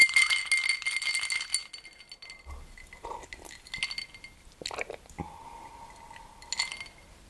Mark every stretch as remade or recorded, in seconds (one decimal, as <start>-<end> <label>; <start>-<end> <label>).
0.0-7.3 recorded